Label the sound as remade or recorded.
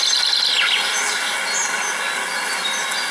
recorded